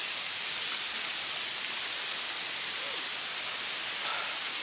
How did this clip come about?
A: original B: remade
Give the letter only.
A